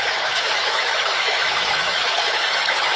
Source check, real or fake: fake